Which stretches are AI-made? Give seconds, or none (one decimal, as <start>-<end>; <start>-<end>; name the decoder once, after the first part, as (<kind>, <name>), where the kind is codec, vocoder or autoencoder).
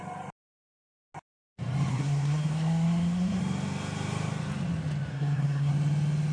1.9-3.4 (codec, SNAC); 5.1-5.7